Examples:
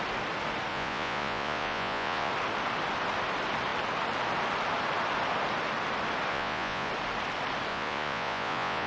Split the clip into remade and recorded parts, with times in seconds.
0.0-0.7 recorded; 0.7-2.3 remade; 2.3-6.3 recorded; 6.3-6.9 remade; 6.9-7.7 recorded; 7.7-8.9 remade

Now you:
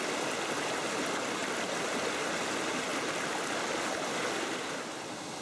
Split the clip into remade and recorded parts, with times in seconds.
0.0-1.4 recorded; 1.4-2.3 remade; 2.3-5.4 recorded